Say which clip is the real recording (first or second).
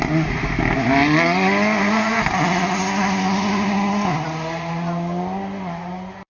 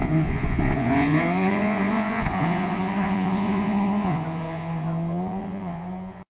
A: first